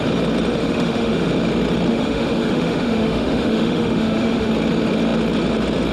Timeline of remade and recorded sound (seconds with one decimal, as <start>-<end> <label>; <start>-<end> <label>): 0.0-0.6 recorded; 0.6-1.3 remade; 1.3-1.9 recorded; 1.9-4.5 remade; 4.5-5.9 recorded